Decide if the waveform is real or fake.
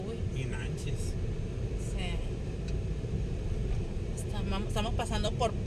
real